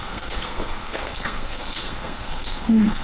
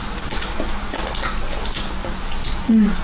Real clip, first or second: second